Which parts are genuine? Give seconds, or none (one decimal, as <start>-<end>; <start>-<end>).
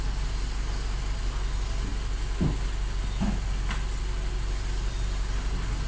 0.0-5.9